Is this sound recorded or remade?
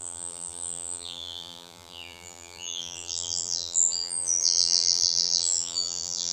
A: remade